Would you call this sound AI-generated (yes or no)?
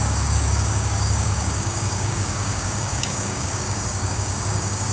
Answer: yes